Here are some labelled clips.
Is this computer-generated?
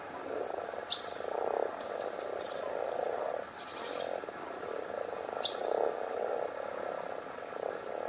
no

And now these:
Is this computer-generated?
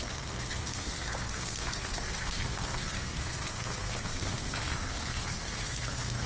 yes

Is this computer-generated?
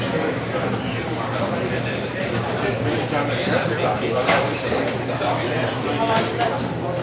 no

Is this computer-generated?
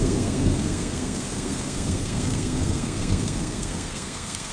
yes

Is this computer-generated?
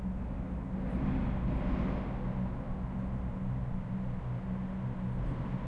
no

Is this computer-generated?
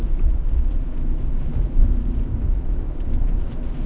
yes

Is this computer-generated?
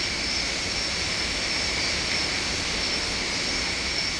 no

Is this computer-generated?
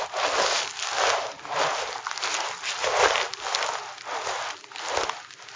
no